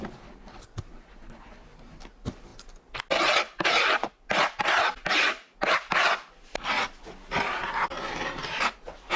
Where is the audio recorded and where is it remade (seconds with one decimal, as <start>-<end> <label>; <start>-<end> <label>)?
0.0-9.2 recorded